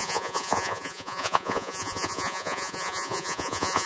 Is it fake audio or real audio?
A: fake